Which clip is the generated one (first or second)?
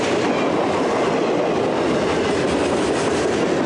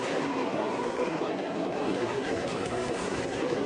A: second